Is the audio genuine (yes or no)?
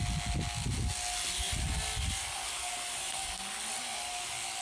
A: yes